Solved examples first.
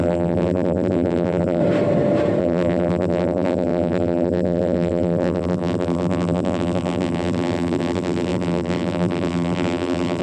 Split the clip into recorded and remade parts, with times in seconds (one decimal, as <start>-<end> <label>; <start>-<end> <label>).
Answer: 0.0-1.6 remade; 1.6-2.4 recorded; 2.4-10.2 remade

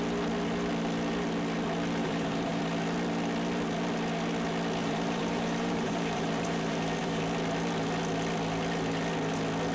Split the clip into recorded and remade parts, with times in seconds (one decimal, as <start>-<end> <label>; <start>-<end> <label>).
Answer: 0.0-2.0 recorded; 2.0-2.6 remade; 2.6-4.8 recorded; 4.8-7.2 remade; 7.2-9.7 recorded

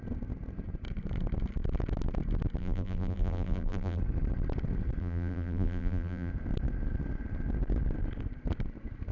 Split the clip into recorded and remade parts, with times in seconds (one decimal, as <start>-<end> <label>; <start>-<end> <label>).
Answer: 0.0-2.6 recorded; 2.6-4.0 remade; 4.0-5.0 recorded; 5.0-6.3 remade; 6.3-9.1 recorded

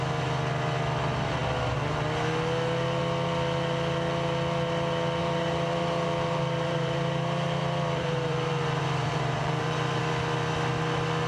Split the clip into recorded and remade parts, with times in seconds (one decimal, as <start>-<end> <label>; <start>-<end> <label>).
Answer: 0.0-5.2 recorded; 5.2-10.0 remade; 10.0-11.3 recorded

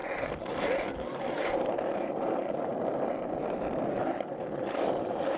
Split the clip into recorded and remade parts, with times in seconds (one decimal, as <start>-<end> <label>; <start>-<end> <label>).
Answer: 0.0-1.1 recorded; 1.1-2.7 remade; 2.7-4.0 recorded; 4.0-5.4 remade

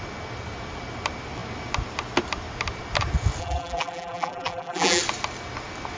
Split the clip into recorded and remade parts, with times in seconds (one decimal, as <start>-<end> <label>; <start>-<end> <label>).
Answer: 0.0-3.4 recorded; 3.4-5.0 remade; 5.0-6.0 recorded